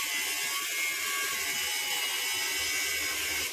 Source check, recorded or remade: recorded